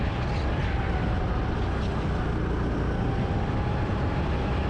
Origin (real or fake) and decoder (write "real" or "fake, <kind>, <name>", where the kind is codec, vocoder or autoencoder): real